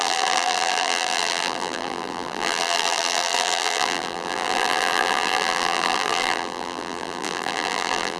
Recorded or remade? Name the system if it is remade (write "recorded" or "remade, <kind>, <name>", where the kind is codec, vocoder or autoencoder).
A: remade, vocoder, BigVGAN v2